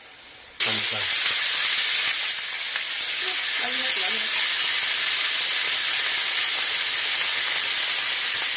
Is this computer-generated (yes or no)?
no